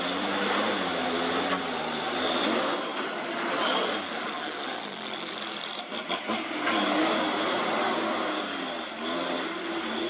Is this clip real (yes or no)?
yes